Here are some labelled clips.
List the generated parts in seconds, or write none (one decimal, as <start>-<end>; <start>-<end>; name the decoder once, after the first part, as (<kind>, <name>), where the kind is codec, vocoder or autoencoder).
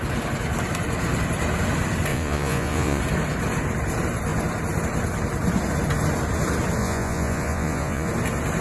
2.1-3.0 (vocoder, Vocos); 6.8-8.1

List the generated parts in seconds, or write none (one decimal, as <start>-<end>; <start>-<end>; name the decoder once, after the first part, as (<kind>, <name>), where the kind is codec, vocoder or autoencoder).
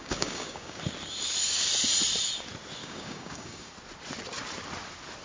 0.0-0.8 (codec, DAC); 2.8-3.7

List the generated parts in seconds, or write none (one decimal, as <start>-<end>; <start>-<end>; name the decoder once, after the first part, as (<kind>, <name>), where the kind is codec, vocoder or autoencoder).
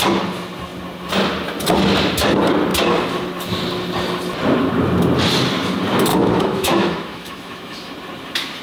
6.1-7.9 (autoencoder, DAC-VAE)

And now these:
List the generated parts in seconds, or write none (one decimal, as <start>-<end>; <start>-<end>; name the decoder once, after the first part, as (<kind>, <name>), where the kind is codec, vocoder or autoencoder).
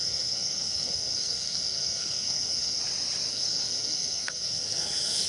0.0-2.8 (codec, SNAC); 3.3-5.3